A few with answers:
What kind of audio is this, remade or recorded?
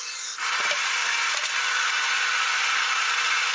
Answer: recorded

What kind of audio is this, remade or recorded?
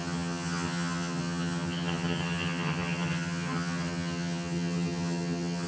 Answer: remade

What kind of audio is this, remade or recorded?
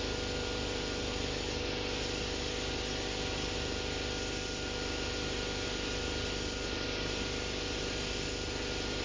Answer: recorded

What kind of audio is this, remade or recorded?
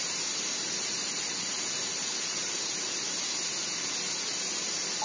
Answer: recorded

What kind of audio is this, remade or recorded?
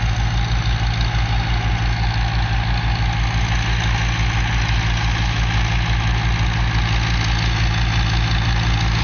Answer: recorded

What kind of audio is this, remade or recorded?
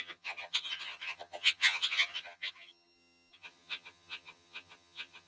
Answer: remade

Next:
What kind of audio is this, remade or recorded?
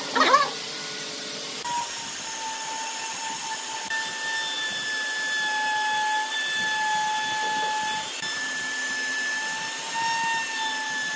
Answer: recorded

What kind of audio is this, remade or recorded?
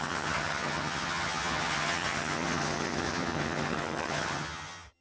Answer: remade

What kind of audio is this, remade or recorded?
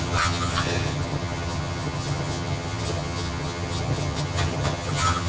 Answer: remade